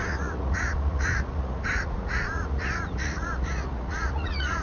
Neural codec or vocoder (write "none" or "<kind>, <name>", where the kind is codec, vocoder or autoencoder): vocoder, Vocos